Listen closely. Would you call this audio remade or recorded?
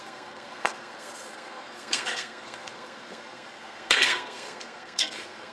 remade